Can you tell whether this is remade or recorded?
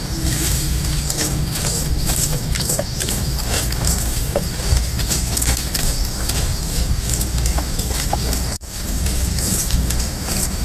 remade